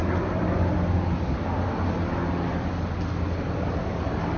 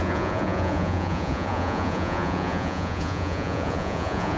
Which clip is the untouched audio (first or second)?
first